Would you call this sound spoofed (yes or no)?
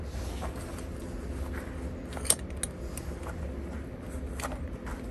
no